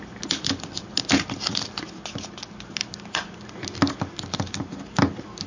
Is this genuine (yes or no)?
yes